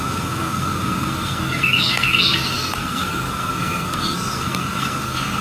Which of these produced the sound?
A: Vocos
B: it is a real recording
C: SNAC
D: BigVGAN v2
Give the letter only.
C